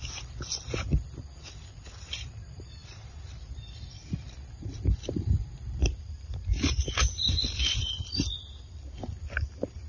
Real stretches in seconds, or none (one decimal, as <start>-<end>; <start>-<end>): 0.0-2.8; 6.9-9.9